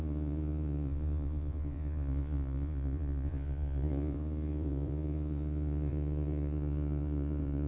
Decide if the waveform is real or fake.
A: fake